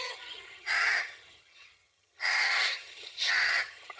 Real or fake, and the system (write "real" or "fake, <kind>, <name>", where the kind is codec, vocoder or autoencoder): fake, vocoder, HiFi-GAN